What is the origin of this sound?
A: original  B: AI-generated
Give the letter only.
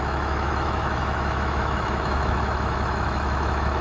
B